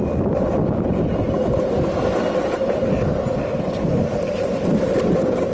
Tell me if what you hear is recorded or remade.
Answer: recorded